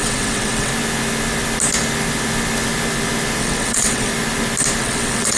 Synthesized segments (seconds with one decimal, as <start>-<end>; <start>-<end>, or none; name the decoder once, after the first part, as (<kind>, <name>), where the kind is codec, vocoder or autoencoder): 0.0-0.7 (vocoder, WaveNeXt); 3.4-4.1; 4.8-5.4